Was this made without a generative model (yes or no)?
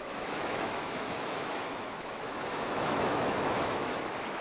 no